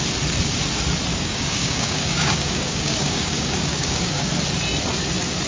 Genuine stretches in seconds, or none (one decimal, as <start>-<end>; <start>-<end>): 0.0-1.1; 4.3-5.5